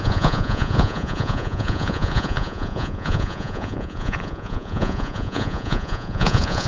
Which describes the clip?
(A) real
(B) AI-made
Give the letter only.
B